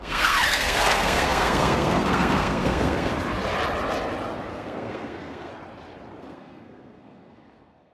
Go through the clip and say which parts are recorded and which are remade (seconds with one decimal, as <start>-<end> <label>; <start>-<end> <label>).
0.0-3.1 remade; 3.1-4.5 recorded; 4.5-5.5 remade; 5.5-6.2 recorded; 6.2-7.9 remade